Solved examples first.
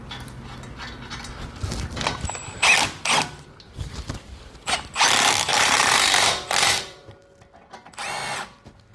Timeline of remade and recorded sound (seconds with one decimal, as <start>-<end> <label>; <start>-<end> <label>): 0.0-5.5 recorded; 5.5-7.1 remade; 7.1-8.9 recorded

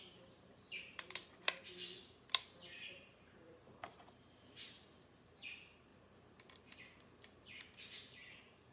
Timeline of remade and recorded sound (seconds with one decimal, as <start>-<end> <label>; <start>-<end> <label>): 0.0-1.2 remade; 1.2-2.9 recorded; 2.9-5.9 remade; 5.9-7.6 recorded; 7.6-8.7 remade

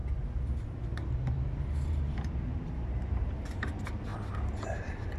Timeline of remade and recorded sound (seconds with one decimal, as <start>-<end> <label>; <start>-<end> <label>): 0.0-1.9 recorded; 1.9-5.2 remade

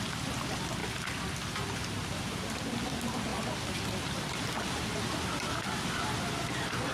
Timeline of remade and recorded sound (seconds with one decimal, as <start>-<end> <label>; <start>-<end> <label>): 0.0-0.8 recorded; 0.8-1.5 remade; 1.5-2.0 recorded; 2.0-2.6 remade; 2.6-3.3 recorded; 3.3-4.5 remade; 4.5-6.9 recorded

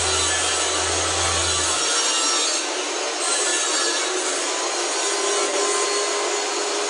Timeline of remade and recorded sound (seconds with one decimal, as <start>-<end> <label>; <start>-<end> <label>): 0.0-6.9 recorded

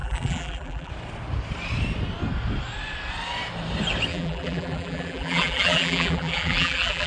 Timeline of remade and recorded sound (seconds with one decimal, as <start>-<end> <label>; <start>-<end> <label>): 0.0-0.9 remade; 0.9-4.1 recorded; 4.1-7.1 remade

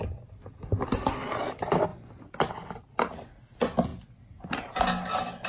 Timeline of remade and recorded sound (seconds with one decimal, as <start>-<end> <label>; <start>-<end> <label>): 0.0-5.5 recorded

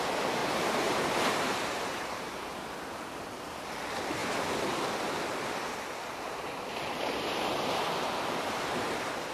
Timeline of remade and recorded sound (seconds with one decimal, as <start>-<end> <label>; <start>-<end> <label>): 0.0-0.4 recorded; 0.4-2.7 remade; 2.7-9.3 recorded